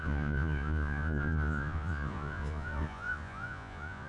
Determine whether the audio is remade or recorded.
remade